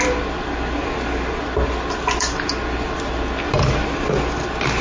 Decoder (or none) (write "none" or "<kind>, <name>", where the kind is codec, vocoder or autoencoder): none